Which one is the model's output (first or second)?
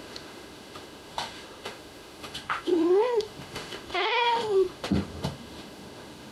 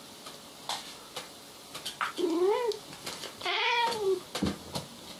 first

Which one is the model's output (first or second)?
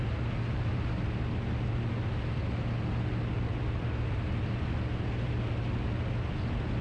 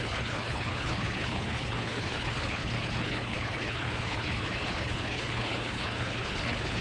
second